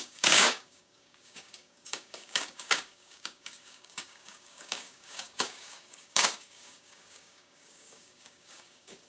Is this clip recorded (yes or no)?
no